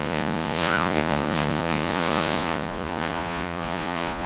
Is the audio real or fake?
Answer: fake